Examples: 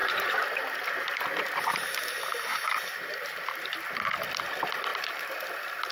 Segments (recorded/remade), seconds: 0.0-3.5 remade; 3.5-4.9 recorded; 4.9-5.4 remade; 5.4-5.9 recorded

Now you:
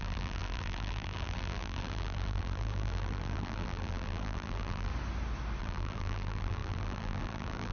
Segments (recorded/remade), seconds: 0.0-4.9 remade; 4.9-5.6 recorded; 5.6-7.7 remade

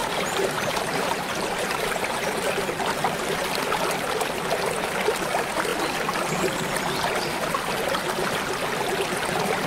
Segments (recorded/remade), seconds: 0.0-2.0 remade; 2.0-9.7 recorded

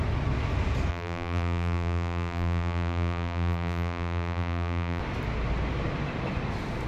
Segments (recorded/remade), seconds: 0.0-0.9 recorded; 0.9-5.0 remade; 5.0-6.9 recorded